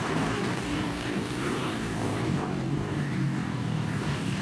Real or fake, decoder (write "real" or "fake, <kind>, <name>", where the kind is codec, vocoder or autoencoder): fake, codec, DAC